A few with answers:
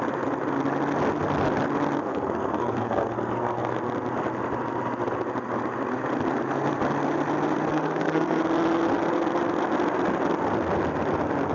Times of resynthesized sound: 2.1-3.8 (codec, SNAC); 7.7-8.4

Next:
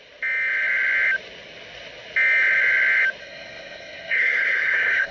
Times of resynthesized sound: 3.2-5.1 (codec, SNAC)

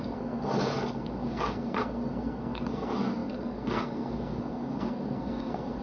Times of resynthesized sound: 0.0-5.8 (codec, SNAC)

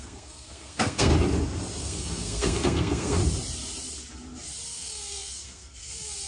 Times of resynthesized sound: 0.0-1.1 (codec, SNAC); 1.8-3.2; 4.7-6.3